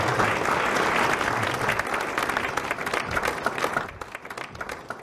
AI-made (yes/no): no